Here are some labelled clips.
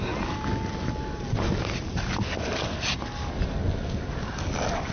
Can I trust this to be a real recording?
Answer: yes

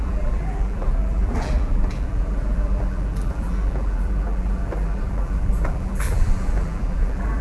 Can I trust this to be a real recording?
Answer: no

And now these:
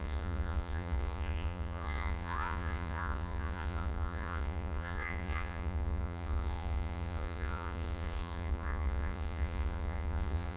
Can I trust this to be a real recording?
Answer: no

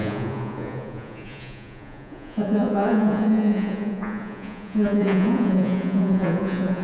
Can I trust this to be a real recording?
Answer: no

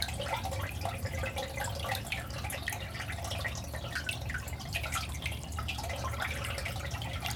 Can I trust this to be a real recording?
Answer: yes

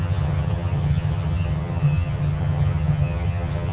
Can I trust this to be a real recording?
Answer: no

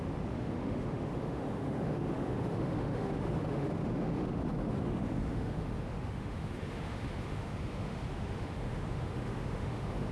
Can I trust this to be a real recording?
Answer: no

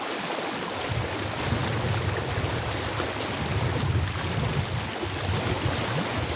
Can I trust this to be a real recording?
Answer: yes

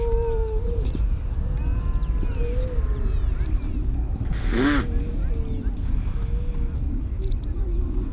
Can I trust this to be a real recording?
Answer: yes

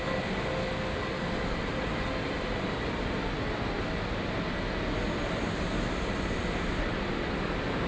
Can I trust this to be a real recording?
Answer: yes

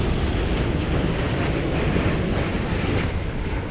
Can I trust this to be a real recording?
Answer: yes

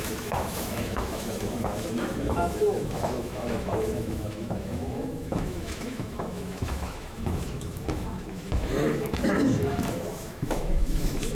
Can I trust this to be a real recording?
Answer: no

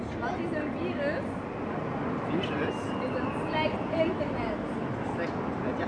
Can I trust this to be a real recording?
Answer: yes